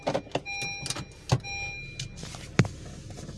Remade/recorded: recorded